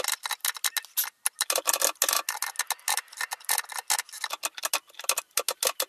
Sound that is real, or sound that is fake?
real